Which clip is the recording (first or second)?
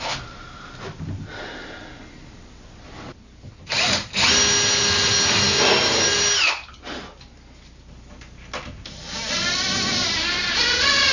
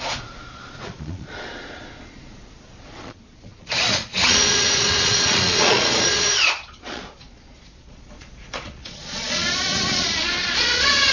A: first